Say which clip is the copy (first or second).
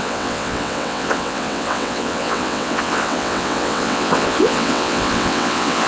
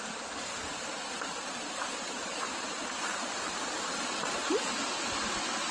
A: first